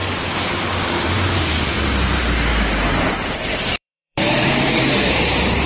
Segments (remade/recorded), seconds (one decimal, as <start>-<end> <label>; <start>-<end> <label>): 0.0-0.5 recorded; 0.5-2.5 remade; 2.5-3.0 recorded; 3.0-5.7 remade